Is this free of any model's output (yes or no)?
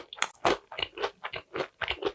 yes